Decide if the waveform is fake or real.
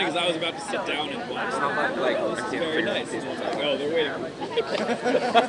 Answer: fake